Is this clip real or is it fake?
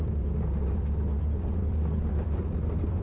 fake